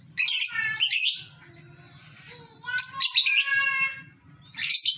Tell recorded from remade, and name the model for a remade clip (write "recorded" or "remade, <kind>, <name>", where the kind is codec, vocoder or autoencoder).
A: recorded